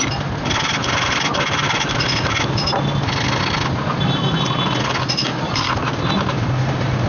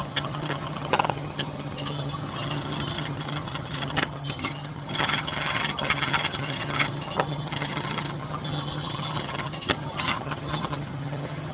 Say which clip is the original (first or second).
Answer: first